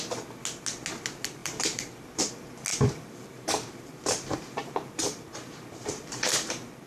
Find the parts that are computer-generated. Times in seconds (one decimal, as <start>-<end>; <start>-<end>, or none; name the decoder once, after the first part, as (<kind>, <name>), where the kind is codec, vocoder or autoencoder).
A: 1.4-2.3 (vocoder, BigVGAN v2); 2.7-6.9